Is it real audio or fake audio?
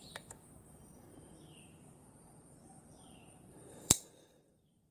fake